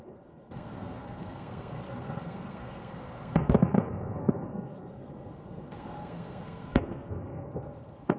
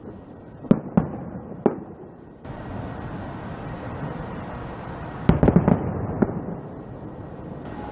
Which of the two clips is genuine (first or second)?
second